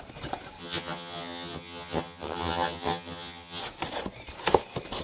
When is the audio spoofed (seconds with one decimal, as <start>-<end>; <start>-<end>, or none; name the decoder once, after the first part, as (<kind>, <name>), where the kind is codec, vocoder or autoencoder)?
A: 0.6-3.6 (vocoder, HiFi-GAN)